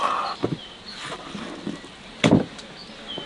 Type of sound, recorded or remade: recorded